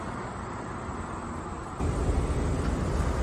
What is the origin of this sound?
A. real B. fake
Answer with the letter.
A